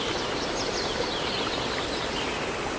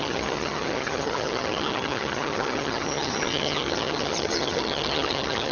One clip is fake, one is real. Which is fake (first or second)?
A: second